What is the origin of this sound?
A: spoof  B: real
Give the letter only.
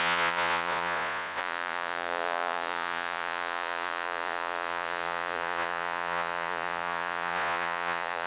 A